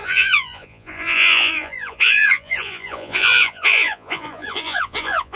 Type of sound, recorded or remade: remade